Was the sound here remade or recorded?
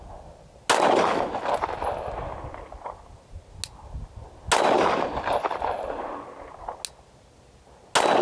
recorded